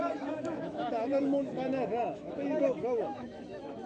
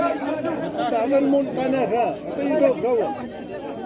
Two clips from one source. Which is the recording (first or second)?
second